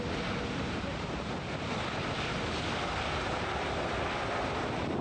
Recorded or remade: recorded